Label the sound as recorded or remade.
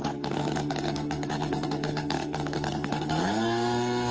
remade